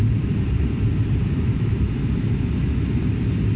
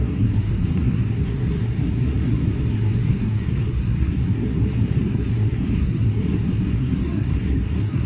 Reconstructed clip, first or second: second